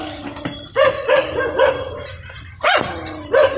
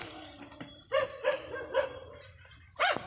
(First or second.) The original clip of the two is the first